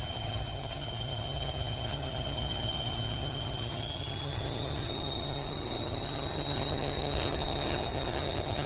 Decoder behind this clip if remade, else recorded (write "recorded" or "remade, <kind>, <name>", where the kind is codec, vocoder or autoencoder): remade, vocoder, HiFi-GAN